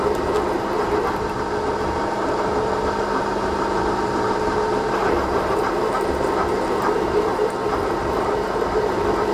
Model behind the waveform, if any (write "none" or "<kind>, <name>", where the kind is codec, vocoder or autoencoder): vocoder, BigVGAN v2